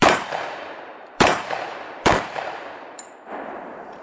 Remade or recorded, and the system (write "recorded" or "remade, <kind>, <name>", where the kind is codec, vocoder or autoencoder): remade, vocoder, BigVGAN v2